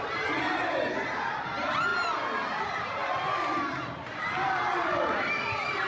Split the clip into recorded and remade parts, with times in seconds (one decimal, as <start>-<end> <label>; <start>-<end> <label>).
0.0-3.0 recorded; 3.0-5.9 remade